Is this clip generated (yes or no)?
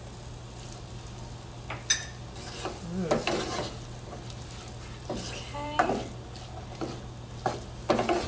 no